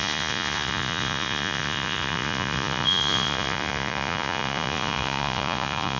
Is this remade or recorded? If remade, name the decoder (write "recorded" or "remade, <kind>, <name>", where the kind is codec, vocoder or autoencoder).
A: remade, vocoder, Vocos